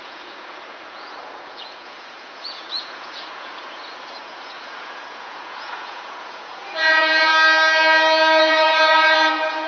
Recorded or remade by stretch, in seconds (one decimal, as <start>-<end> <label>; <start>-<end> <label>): 0.0-7.3 remade; 7.3-8.4 recorded; 8.4-9.7 remade